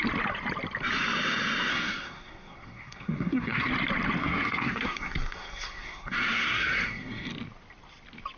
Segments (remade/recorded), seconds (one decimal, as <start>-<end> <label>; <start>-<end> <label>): 0.0-1.7 recorded; 1.7-3.7 remade; 3.7-4.2 recorded; 4.2-7.3 remade; 7.3-8.4 recorded